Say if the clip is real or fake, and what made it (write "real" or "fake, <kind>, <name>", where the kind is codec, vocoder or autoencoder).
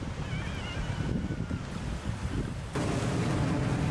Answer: real